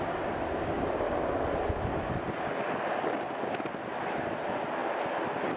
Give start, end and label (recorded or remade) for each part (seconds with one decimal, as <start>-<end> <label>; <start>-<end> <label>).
0.0-5.6 recorded